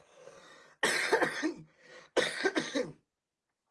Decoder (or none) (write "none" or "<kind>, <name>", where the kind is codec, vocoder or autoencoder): none